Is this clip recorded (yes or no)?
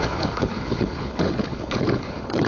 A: no